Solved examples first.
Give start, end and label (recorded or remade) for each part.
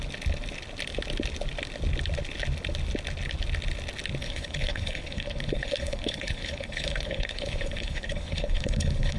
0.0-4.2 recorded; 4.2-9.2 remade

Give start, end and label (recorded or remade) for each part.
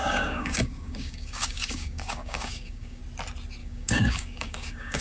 0.0-3.0 remade; 3.0-3.6 recorded; 3.6-5.0 remade